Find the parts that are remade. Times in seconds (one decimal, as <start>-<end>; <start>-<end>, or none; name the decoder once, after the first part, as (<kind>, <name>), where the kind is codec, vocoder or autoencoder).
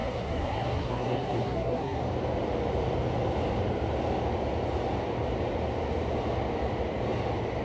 0.0-2.0 (codec, SNAC)